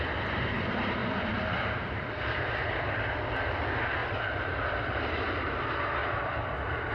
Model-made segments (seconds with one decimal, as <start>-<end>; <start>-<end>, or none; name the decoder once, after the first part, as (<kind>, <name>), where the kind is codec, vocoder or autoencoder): 1.0-3.1 (vocoder, BigVGAN v2); 4.0-5.1; 6.0-6.9